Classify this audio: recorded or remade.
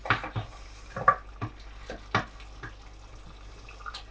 recorded